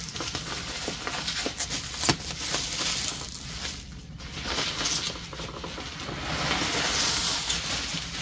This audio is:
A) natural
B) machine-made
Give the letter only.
A